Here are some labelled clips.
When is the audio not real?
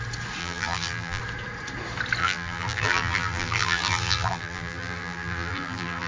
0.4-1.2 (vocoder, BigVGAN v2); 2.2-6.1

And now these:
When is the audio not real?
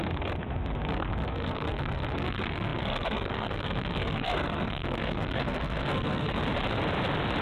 0.0-6.4 (codec, SNAC)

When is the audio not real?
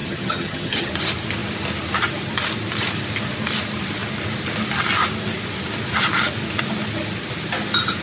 0.0-0.9 (vocoder, HiFi-GAN)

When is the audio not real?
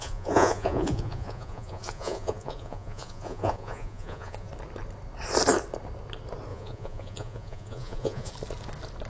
0.0-4.5 (vocoder, Vocos); 6.5-8.3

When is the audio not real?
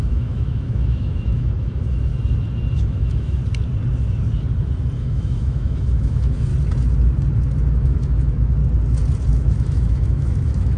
0.0-2.1 (autoencoder, DAC-VAE); 2.7-3.4; 5.0-6.5; 7.7-8.6; 9.3-10.8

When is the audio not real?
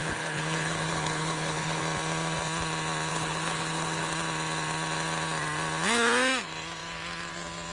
0.0-1.8 (codec, HILCodec); 3.1-4.1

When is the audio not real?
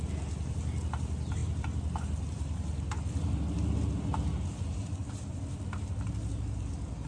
none